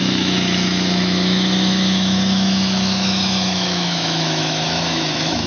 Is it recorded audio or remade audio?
remade